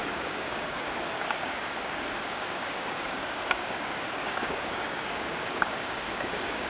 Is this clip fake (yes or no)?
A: yes